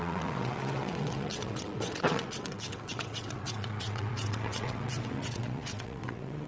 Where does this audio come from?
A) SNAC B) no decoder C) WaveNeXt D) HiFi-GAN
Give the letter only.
C